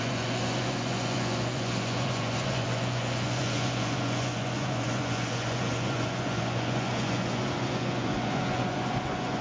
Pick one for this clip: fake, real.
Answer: fake